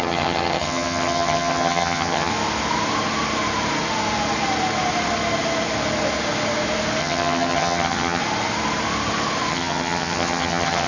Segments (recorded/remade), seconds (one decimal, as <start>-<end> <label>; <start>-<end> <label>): 0.0-2.3 remade; 2.3-7.0 recorded; 7.0-8.2 remade; 8.2-9.5 recorded; 9.5-10.9 remade